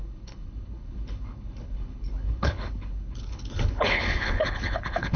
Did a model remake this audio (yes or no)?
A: yes